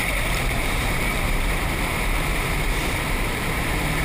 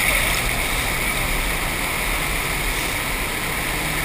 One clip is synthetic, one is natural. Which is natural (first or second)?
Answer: second